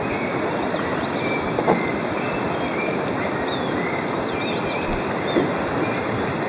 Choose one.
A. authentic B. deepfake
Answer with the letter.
A